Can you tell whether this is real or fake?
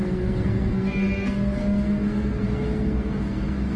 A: fake